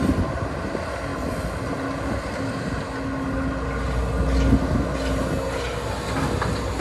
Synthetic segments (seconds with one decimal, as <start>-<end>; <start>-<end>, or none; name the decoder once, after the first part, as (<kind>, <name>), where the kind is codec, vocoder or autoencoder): none